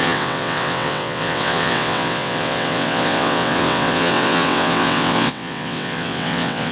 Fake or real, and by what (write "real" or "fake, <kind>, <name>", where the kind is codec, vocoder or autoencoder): fake, vocoder, WaveNeXt